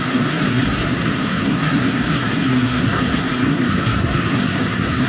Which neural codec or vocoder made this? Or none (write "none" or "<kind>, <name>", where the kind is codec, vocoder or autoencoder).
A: codec, SNAC